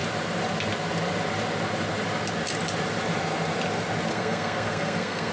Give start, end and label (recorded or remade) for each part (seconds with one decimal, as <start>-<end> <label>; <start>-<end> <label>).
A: 0.0-4.1 recorded; 4.1-5.3 remade